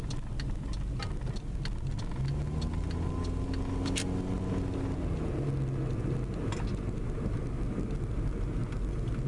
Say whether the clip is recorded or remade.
recorded